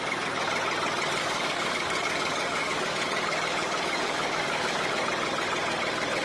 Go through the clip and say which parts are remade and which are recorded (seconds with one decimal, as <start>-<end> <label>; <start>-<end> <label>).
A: 0.0-1.2 recorded; 1.2-4.9 remade; 4.9-6.2 recorded